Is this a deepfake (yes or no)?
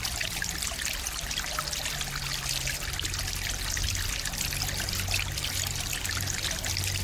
no